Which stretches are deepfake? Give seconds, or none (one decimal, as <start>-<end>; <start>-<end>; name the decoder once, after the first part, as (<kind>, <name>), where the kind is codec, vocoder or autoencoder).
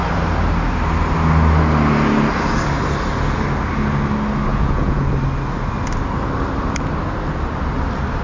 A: 4.5-5.0 (vocoder, Vocos)